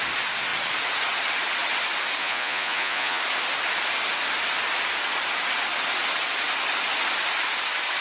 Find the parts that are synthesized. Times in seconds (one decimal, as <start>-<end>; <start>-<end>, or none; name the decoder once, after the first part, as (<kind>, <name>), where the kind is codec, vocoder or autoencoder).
2.2-3.2 (vocoder, Vocos)